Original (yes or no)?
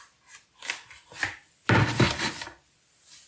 no